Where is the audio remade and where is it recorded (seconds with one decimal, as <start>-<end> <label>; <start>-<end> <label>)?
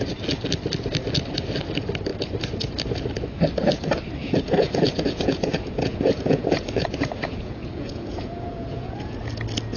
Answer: 0.0-4.2 recorded; 4.2-9.3 remade; 9.3-9.8 recorded